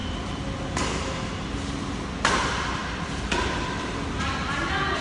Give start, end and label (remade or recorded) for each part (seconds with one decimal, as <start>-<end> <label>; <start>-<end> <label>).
0.0-5.0 recorded